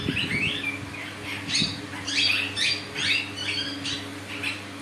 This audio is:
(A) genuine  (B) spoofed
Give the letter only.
A